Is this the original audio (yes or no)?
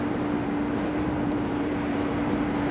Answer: no